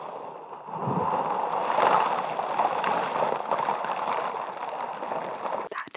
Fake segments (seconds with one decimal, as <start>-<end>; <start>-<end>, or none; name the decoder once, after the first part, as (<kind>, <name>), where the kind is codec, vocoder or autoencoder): none